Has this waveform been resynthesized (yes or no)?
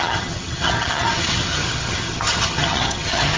yes